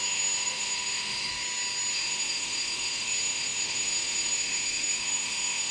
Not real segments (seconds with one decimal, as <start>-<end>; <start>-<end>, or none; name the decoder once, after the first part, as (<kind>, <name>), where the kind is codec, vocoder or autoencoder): 0.0-1.3 (autoencoder, DAC-VAE); 1.9-5.7